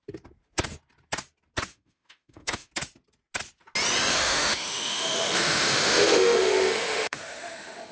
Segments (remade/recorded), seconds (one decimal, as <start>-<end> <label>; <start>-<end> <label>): 0.0-1.7 recorded; 1.7-2.7 remade; 2.7-4.1 recorded; 4.1-7.9 remade